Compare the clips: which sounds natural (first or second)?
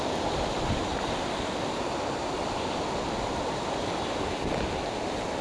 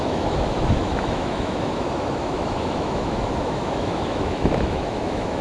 first